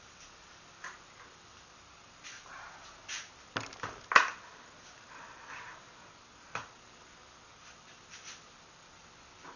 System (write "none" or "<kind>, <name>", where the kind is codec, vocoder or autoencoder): none